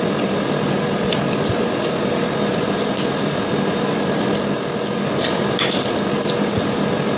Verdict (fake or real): real